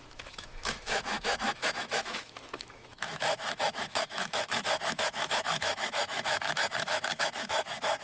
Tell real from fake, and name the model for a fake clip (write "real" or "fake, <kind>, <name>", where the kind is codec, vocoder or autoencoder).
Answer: fake, autoencoder, DAC-VAE